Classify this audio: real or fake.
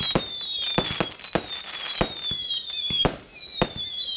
real